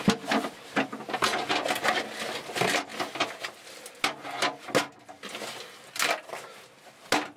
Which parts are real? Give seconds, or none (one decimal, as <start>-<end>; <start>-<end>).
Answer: 0.0-7.4